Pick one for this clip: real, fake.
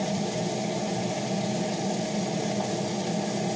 real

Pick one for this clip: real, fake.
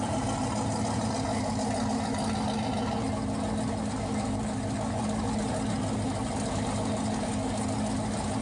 real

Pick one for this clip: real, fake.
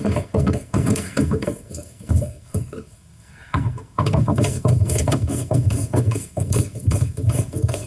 fake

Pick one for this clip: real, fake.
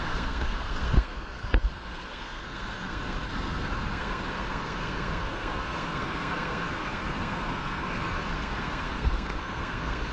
fake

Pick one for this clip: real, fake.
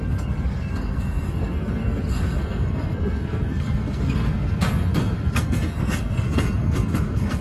fake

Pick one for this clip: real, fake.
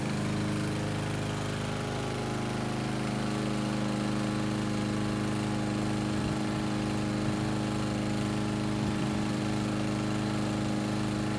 real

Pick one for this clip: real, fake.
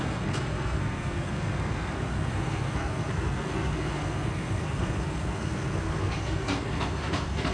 fake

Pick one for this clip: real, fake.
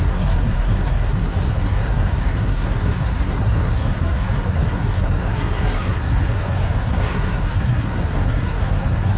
fake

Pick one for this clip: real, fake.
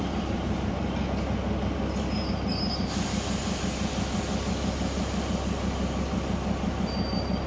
real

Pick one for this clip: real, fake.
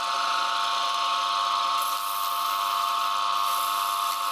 real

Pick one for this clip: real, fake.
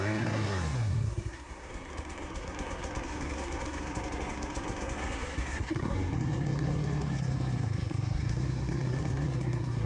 fake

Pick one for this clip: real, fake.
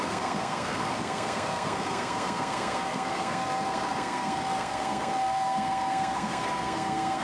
fake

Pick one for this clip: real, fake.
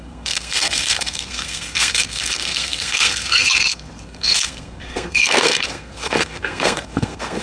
fake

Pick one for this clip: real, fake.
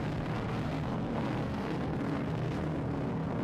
fake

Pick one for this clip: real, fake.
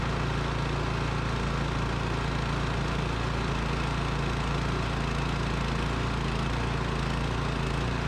real